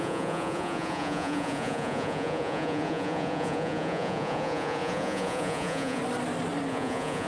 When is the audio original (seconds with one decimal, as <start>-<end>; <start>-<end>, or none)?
6.0-6.7